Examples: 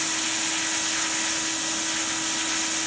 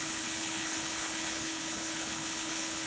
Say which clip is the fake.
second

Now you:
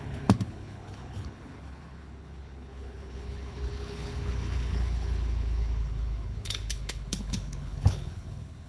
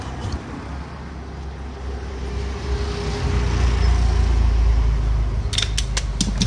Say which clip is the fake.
first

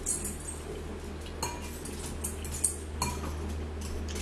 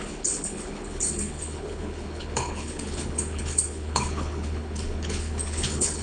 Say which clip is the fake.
second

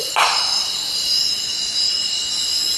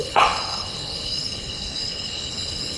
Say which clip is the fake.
second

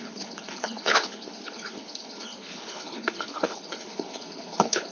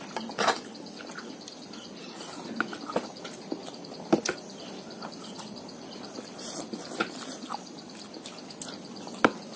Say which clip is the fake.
first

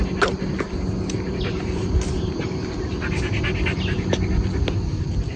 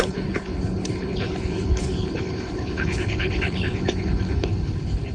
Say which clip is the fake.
second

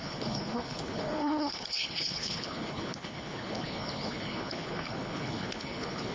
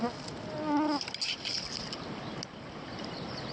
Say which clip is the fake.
first